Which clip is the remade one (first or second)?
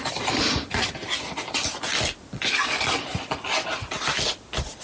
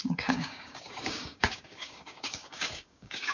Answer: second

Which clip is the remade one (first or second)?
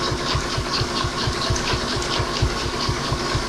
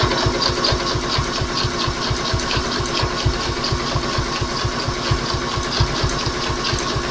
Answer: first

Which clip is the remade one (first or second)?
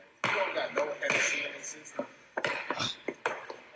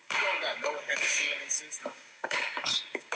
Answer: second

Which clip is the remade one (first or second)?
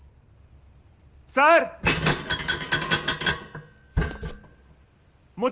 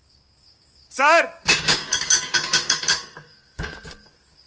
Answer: second